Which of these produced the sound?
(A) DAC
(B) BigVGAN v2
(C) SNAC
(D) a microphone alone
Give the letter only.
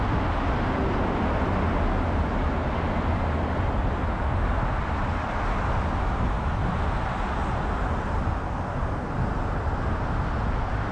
D